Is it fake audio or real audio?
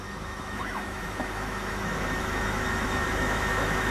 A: fake